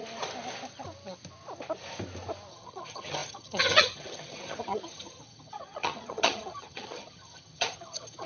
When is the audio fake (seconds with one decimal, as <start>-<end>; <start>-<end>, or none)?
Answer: 2.5-8.3